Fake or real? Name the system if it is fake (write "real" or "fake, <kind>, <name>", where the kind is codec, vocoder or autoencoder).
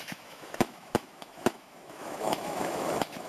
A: fake, autoencoder, DAC-VAE